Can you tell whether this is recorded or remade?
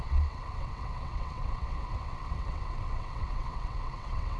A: remade